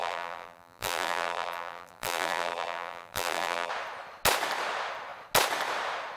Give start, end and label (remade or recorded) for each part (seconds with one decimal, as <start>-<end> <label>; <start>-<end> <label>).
0.0-3.7 remade; 3.7-6.2 recorded